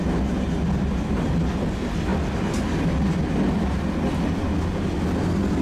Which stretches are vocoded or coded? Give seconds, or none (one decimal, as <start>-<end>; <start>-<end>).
none